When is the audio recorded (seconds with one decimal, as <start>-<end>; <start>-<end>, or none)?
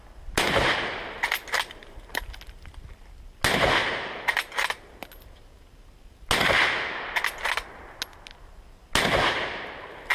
0.0-1.8; 2.4-3.8; 4.9-10.1